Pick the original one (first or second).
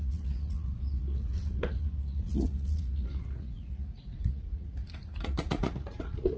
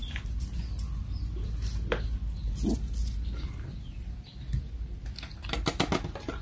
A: second